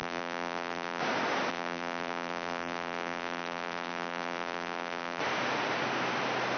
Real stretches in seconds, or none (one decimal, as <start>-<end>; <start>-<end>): 1.0-1.5; 5.2-6.6